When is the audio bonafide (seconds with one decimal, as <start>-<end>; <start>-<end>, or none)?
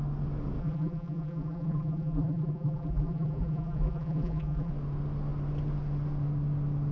0.0-0.6; 4.7-6.9